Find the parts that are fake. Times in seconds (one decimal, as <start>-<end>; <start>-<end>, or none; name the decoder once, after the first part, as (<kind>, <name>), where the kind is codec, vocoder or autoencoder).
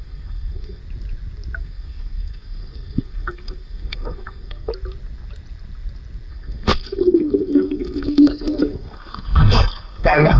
0.0-0.8 (codec, SNAC); 1.6-4.7; 6.3-10.4